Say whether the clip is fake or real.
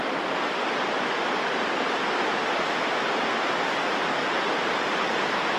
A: real